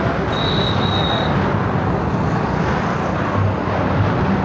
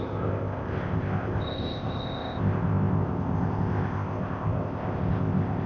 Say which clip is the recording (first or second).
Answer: first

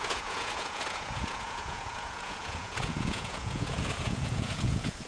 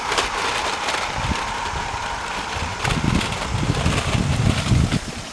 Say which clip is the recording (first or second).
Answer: second